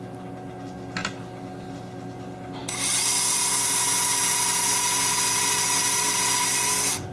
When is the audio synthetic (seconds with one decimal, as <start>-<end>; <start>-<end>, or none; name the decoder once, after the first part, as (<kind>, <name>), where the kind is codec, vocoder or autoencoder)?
none